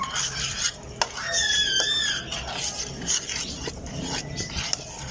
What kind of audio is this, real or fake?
real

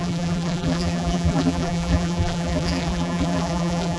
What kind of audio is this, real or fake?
fake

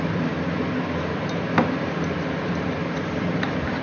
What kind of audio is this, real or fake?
fake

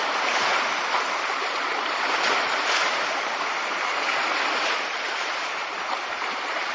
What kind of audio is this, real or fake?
fake